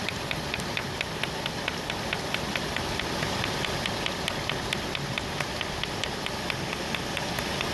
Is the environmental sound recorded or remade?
recorded